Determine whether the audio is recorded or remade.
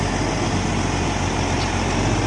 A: recorded